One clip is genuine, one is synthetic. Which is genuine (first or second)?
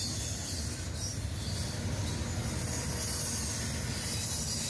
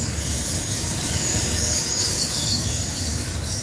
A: first